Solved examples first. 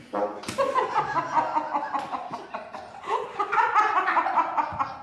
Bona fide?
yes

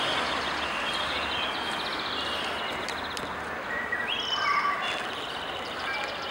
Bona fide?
yes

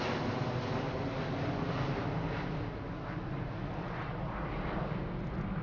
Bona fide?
yes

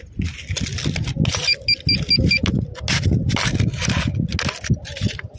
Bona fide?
yes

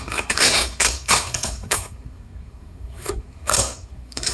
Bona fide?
no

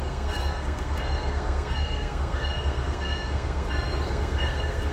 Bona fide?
no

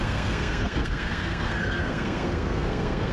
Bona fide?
no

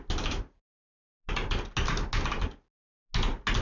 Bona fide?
yes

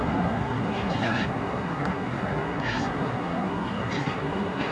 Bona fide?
no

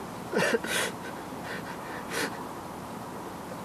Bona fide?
yes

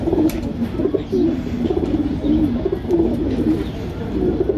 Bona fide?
yes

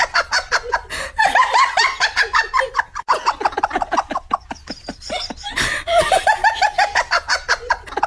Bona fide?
yes